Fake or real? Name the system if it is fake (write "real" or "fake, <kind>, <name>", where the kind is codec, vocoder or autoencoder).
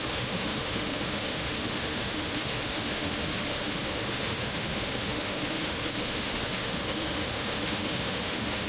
fake, autoencoder, DAC-VAE